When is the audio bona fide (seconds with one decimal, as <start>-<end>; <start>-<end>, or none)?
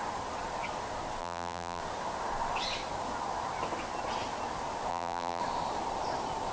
0.0-1.2; 1.8-4.9; 5.4-6.5